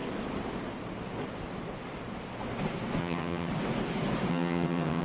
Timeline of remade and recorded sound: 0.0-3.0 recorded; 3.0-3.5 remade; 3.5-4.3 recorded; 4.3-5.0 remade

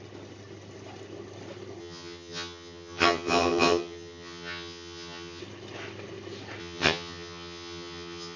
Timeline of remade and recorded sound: 0.0-1.8 recorded; 1.8-5.4 remade; 5.4-6.6 recorded; 6.6-8.4 remade

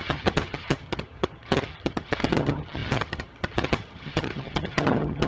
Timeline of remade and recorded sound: 0.0-5.3 remade